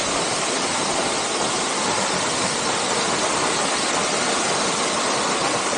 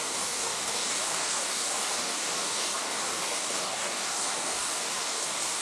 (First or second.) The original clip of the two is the first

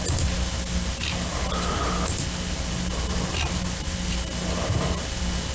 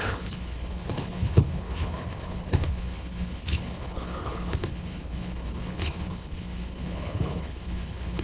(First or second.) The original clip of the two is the first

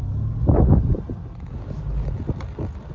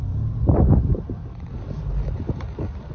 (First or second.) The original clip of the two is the first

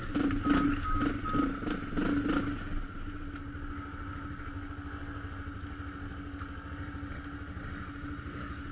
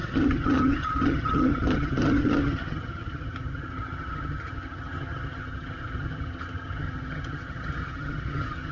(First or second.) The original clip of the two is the first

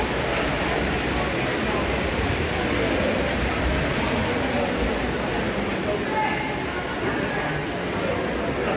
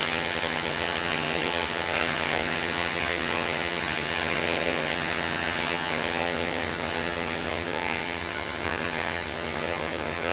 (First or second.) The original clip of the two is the first